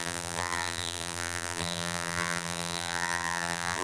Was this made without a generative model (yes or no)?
no